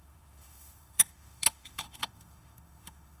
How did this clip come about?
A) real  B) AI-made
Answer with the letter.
B